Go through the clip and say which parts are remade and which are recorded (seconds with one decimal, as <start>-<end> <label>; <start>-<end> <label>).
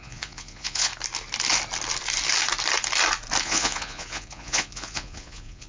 0.0-0.9 remade; 0.9-3.4 recorded; 3.4-5.7 remade